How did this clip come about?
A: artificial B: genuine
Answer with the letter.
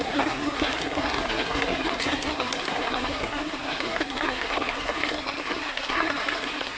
A